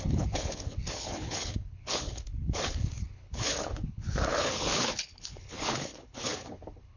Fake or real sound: fake